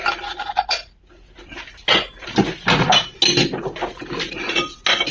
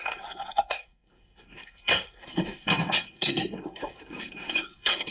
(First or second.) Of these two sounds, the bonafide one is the first